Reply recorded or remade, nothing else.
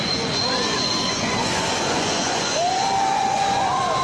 remade